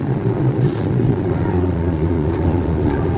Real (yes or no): no